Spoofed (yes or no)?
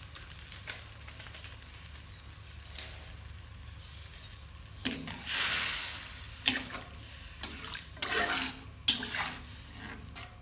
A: no